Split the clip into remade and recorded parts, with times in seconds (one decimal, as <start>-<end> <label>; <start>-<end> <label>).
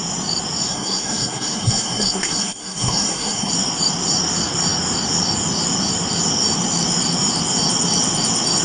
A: 0.0-0.7 recorded; 0.7-3.5 remade; 3.5-8.6 recorded